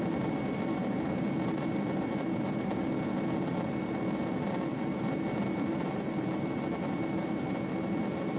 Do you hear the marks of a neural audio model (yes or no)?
no